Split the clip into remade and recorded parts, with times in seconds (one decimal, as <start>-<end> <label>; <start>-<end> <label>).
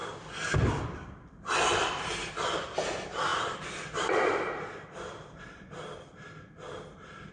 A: 0.0-7.3 remade